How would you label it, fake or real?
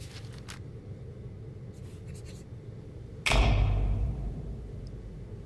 real